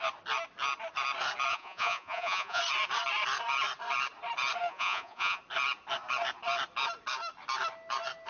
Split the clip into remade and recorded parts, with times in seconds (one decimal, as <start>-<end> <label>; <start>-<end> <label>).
0.0-1.5 recorded; 1.5-2.6 remade; 2.6-4.7 recorded; 4.7-5.4 remade; 5.4-8.3 recorded